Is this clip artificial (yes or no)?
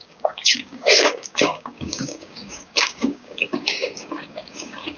yes